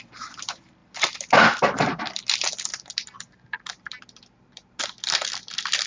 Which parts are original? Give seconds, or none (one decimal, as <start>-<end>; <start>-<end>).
0.0-5.9